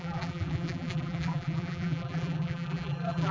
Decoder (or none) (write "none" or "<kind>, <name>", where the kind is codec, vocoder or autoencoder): vocoder, BigVGAN v2